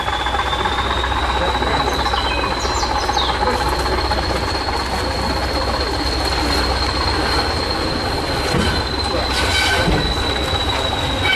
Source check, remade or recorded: recorded